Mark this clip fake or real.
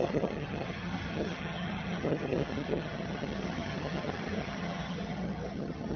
fake